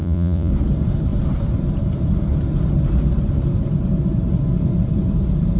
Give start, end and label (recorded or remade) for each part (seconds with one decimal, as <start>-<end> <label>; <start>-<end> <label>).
0.0-0.5 remade; 0.5-5.6 recorded